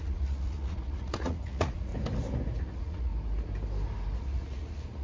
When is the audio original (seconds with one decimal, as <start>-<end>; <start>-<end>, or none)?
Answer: 1.9-2.6; 3.1-4.2